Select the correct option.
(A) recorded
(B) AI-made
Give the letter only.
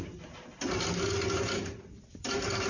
A